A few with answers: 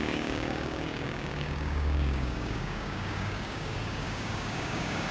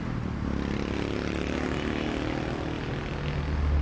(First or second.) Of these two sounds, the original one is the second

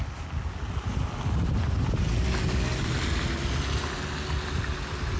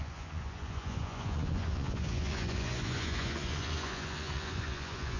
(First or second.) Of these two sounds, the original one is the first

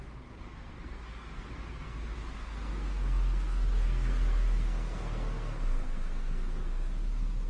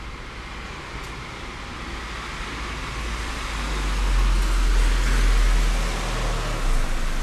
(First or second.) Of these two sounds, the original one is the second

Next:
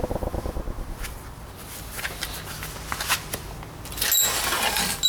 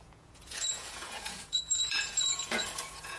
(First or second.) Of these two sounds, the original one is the first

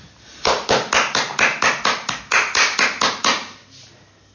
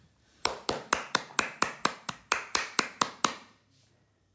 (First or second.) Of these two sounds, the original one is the first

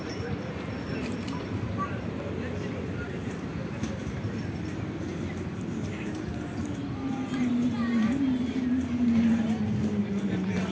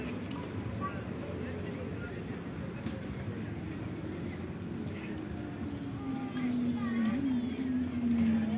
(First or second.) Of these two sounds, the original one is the second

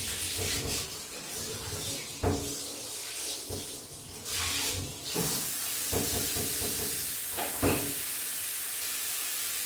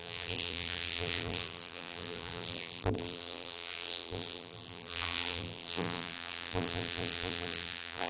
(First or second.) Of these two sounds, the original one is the first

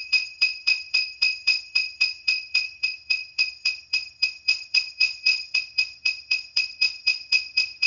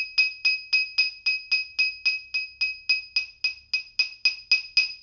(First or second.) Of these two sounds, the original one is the second